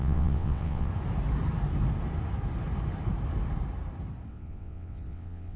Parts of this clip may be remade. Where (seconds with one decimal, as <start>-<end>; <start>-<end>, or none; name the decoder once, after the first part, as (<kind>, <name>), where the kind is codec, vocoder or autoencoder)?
0.0-0.9 (vocoder, WaveNeXt); 4.3-5.6